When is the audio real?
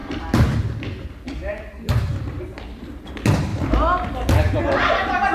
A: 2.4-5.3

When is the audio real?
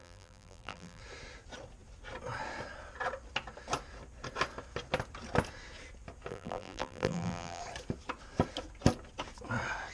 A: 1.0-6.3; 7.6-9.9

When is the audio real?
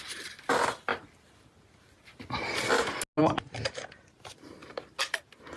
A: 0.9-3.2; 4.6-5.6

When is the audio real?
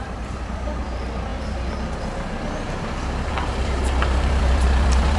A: none